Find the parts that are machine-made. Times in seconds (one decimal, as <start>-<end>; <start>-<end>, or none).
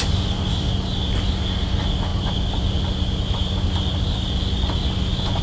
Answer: none